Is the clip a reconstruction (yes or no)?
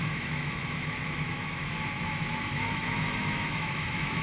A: yes